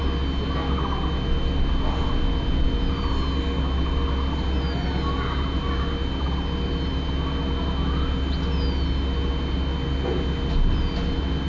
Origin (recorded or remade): recorded